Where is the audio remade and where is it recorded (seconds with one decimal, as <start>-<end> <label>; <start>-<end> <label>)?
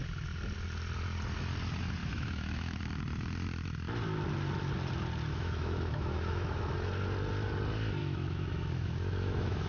0.0-2.0 recorded; 2.0-2.8 remade; 2.8-5.3 recorded; 5.3-6.6 remade; 6.6-8.0 recorded; 8.0-9.7 remade